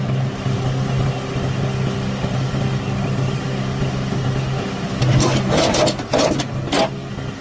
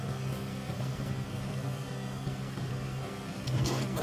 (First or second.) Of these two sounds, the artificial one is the second